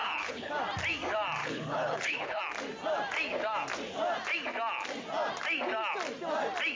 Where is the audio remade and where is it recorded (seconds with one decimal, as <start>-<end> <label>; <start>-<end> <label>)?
0.0-0.5 remade; 0.5-1.4 recorded; 1.4-2.4 remade; 2.4-6.8 recorded